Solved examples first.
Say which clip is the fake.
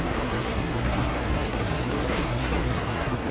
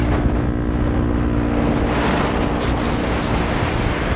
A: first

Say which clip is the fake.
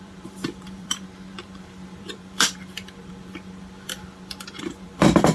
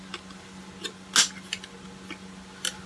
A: first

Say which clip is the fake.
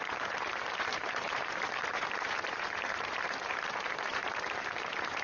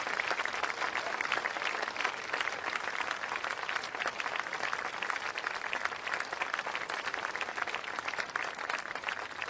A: first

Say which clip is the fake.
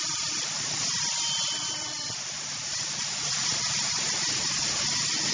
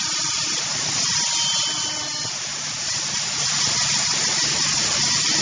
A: first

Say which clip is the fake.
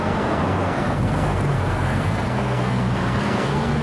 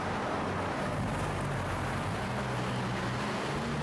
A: first